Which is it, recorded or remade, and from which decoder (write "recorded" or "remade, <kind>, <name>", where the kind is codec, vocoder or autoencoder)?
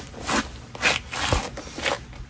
recorded